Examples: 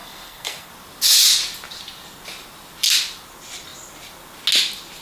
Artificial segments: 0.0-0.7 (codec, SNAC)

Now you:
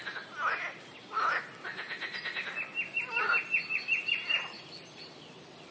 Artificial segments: none

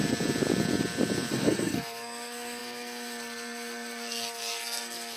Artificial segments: 1.3-5.2 (codec, SNAC)

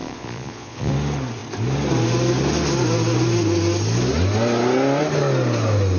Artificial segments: 0.0-0.9 (vocoder, Vocos)

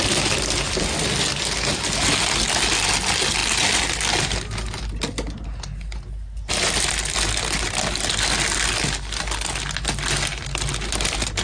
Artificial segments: none

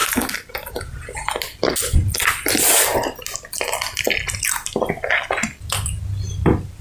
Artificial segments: none

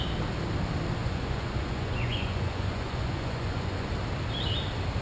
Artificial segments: 1.0-3.9 (vocoder, Vocos)

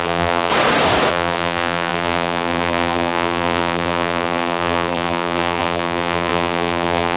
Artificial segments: 0.0-0.5 (vocoder, BigVGAN v2); 1.1-7.2